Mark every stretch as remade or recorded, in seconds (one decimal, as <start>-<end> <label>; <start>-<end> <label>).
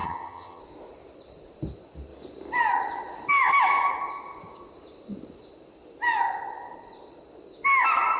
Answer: 0.0-0.6 remade; 0.6-8.2 recorded